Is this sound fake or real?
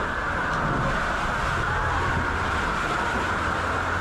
real